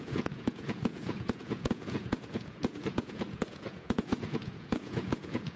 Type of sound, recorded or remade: remade